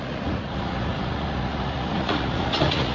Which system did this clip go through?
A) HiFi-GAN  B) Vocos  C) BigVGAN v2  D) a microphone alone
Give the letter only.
B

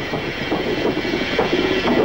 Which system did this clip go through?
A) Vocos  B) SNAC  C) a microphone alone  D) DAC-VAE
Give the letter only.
A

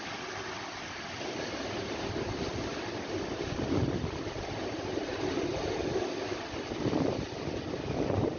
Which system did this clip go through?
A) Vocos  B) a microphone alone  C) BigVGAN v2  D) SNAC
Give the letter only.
B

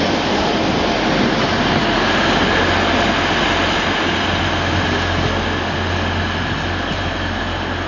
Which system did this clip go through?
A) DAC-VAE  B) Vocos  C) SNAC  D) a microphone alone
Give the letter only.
D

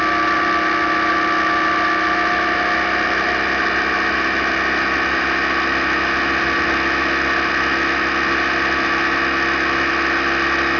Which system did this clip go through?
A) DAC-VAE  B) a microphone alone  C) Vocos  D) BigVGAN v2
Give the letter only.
B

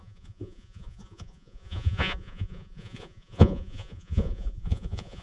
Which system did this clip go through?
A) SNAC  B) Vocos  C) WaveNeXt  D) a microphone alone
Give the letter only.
B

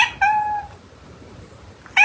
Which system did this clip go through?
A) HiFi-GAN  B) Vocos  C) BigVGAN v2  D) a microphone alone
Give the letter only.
D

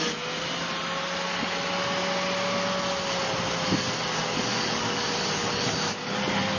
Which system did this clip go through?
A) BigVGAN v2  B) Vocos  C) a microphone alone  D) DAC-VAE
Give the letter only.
C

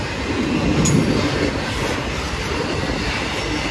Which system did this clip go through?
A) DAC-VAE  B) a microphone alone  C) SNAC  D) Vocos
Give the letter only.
B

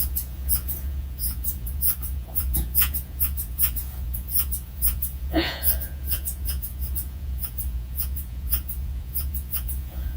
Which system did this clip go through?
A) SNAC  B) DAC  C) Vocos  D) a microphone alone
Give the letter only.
C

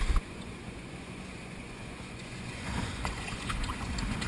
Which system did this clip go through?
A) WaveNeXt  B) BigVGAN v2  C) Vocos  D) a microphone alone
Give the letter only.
C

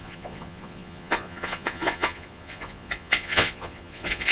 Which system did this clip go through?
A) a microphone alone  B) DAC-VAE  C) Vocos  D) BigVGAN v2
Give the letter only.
C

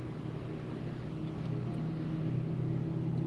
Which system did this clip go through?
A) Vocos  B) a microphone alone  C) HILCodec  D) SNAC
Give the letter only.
B